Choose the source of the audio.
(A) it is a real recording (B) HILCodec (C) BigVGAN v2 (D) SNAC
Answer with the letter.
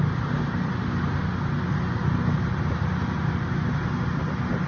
A